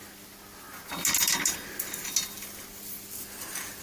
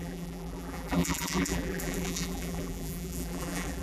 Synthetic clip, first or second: second